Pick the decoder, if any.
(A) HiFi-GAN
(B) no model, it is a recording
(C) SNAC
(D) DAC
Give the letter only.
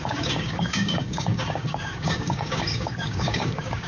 D